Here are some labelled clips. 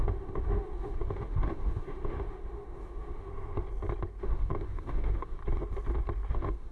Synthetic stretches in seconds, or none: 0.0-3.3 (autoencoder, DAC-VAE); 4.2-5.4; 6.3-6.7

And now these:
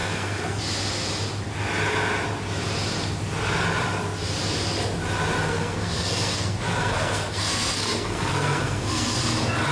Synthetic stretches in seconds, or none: 0.0-0.6 (codec, SNAC); 5.5-9.2